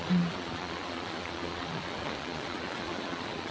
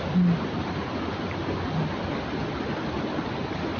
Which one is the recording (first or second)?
second